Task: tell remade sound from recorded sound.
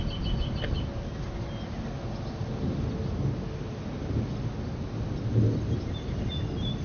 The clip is recorded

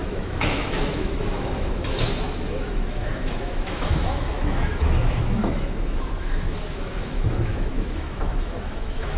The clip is remade